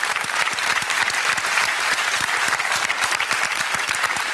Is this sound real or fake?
fake